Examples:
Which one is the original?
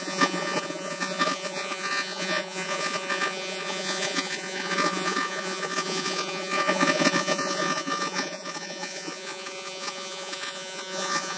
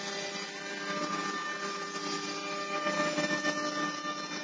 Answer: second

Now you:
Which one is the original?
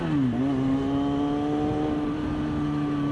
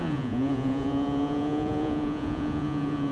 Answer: first